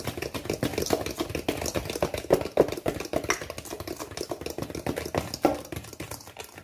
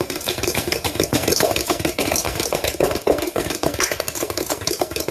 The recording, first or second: first